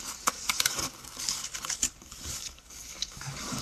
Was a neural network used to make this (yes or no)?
yes